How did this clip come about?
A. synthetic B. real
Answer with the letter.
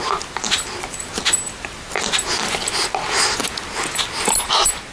B